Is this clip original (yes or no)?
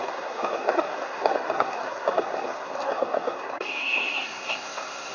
no